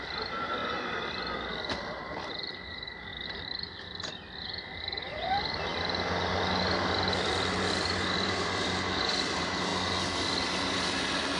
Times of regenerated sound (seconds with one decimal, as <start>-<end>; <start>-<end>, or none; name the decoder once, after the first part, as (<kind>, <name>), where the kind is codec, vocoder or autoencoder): 0.0-5.7 (vocoder, BigVGAN v2); 6.6-9.7; 11.0-11.4

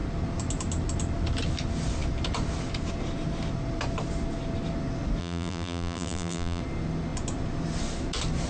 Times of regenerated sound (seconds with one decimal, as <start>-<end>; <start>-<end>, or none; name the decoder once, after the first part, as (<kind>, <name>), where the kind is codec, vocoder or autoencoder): 5.2-6.6 (vocoder, BigVGAN v2)

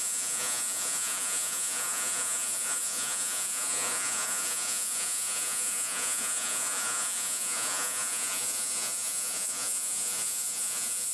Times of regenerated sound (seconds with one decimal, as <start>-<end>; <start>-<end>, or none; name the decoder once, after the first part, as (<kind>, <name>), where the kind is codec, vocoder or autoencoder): 0.0-11.1 (vocoder, Vocos)

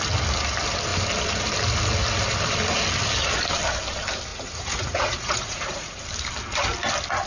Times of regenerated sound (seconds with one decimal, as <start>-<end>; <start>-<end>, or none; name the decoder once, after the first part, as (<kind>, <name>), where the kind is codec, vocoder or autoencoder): 4.3-6.0 (vocoder, Vocos)